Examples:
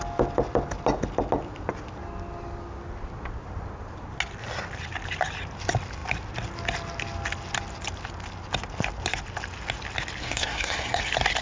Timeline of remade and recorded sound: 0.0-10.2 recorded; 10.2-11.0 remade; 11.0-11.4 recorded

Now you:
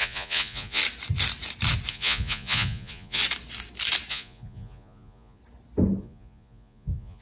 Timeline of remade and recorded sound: 0.0-0.8 remade; 0.8-1.9 recorded; 1.9-3.2 remade; 3.2-4.1 recorded; 4.1-5.4 remade; 5.4-6.0 recorded; 6.0-7.2 remade

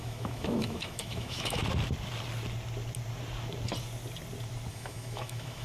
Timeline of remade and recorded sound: 0.0-1.6 remade; 1.6-4.7 recorded; 4.7-5.6 remade

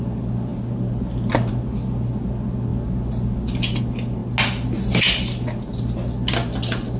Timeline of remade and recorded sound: 0.0-7.0 recorded